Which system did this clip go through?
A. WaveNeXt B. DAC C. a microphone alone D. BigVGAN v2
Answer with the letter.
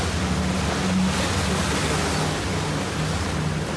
C